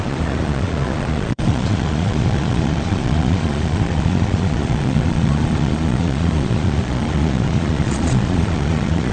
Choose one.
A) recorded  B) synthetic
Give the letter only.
B